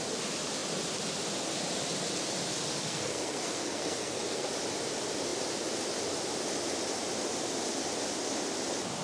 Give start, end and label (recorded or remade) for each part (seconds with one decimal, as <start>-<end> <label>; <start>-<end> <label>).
0.0-2.7 recorded; 2.7-4.5 remade; 4.5-9.0 recorded